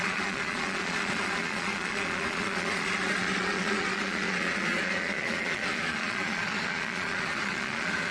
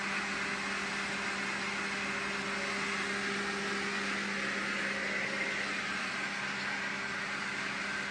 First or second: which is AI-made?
first